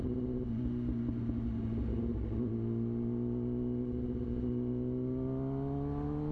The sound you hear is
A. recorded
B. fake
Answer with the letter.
A